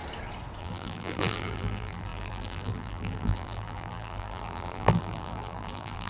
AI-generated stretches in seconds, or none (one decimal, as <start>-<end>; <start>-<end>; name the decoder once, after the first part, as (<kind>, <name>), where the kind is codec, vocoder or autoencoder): 0.6-6.1 (vocoder, BigVGAN v2)